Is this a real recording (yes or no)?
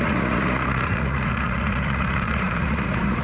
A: no